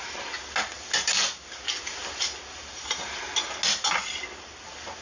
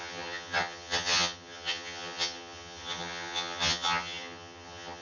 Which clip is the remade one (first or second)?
second